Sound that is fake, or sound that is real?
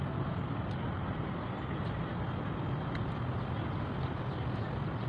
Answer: real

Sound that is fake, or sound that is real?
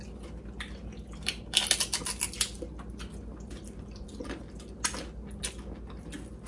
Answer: real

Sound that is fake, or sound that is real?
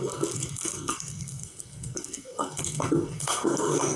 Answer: fake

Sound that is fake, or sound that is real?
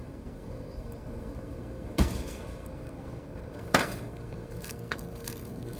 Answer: fake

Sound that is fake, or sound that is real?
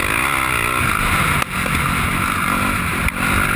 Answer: real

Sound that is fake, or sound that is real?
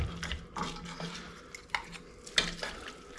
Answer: real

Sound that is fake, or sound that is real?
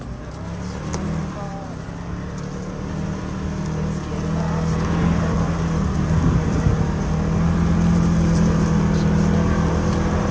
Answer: real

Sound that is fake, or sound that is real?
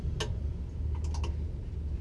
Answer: real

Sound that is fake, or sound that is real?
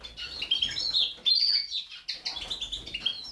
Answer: real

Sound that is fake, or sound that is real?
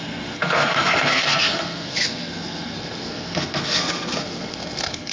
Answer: fake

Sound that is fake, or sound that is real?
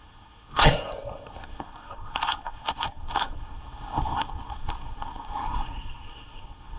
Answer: fake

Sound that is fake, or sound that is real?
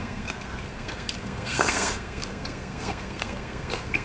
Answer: fake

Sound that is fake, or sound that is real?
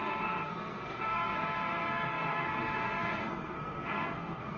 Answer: fake